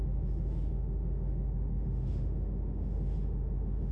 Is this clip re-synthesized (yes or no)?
yes